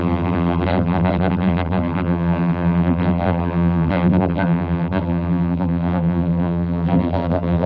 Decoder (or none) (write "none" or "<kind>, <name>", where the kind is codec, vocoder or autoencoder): vocoder, BigVGAN v2